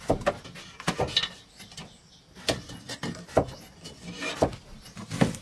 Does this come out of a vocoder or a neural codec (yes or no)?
no